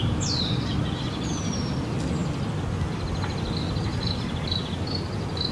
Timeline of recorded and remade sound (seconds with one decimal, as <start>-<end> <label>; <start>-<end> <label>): 0.0-5.5 recorded